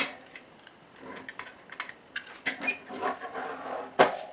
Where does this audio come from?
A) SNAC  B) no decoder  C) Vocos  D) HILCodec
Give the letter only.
B